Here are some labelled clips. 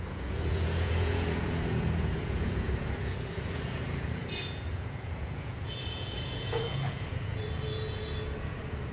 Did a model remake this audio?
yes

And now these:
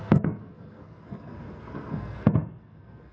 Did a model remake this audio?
yes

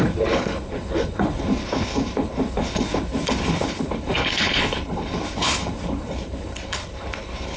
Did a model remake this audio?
yes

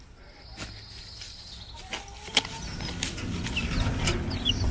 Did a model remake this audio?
no